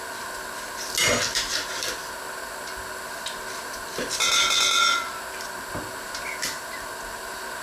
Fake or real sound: real